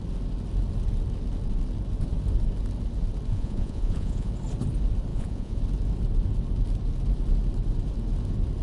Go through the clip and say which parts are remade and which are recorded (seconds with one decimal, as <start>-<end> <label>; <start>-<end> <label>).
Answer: 0.0-3.3 recorded; 3.3-4.3 remade; 4.3-5.1 recorded; 5.1-5.6 remade; 5.6-8.6 recorded